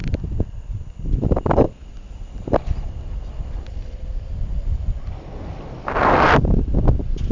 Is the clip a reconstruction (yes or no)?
no